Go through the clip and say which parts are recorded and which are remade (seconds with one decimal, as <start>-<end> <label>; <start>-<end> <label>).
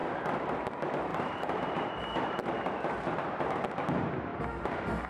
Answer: 0.0-4.3 remade; 4.3-5.1 recorded